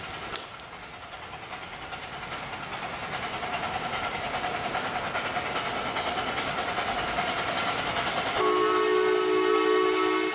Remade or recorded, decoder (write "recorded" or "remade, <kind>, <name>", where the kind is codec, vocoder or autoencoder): recorded